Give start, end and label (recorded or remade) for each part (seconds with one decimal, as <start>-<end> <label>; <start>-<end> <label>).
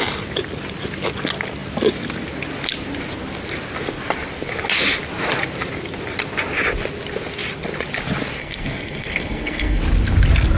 0.0-8.4 recorded; 8.4-9.8 remade; 9.8-10.6 recorded